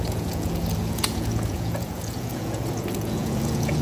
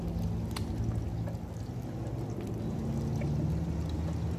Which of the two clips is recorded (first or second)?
second